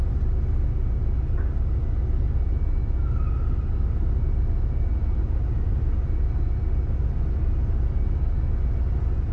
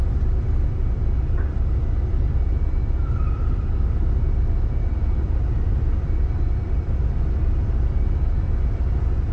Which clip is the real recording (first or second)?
first